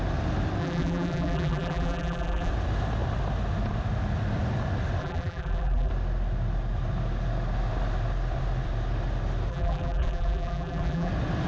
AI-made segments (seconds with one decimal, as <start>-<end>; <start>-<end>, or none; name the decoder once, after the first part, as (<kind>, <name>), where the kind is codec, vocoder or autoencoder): 0.6-2.5 (vocoder, BigVGAN v2); 5.0-5.9; 9.5-11.1